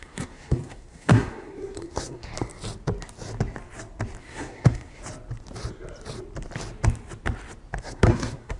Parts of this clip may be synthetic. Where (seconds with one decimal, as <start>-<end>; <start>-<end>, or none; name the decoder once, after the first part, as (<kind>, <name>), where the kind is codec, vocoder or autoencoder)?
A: 0.0-2.3 (codec, SNAC); 4.2-5.0; 7.8-8.6

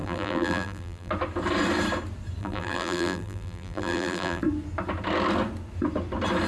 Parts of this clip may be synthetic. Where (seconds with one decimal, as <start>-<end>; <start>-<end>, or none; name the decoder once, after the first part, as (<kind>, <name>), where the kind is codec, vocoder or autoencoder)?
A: 0.0-1.1 (vocoder, BigVGAN v2); 2.4-4.4

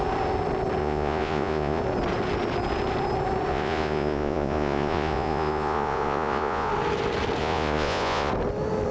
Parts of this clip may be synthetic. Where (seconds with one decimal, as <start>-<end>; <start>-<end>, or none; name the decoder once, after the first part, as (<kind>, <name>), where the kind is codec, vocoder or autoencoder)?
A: 0.8-1.8 (vocoder, Vocos); 3.5-6.7; 7.4-8.3